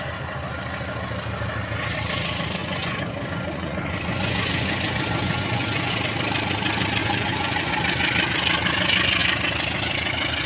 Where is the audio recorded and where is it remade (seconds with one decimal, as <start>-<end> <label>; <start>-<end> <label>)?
0.0-2.6 recorded; 2.6-5.9 remade; 5.9-7.0 recorded; 7.0-7.7 remade; 7.7-10.5 recorded